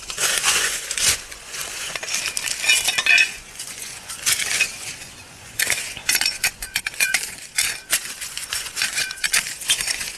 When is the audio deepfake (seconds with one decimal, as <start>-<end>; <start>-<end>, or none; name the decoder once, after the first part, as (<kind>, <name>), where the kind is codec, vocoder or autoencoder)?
0.0-2.0 (vocoder, Vocos); 3.1-10.2